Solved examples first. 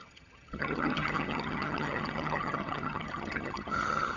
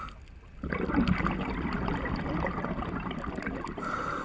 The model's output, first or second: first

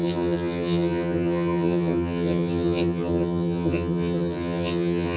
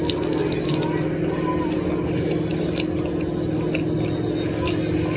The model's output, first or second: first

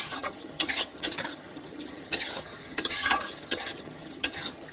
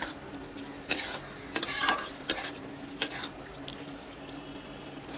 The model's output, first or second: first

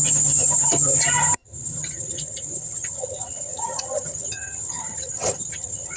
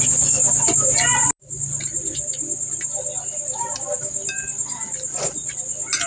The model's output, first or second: first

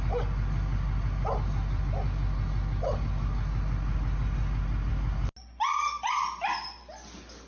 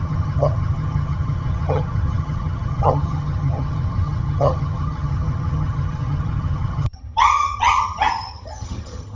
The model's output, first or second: second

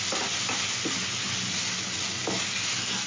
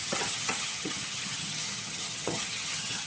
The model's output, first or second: second